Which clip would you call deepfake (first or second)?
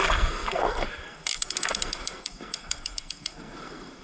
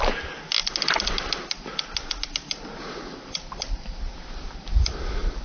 first